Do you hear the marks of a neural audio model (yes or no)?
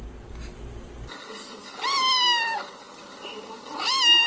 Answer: no